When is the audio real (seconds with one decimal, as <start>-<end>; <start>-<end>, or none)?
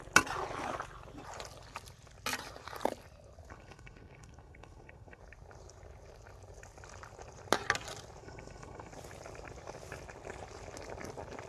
0.0-3.5; 5.2-8.2; 8.9-11.5